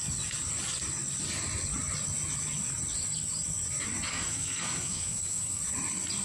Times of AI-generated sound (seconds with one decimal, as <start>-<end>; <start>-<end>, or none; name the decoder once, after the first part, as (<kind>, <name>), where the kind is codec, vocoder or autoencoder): 4.1-5.6 (codec, SNAC)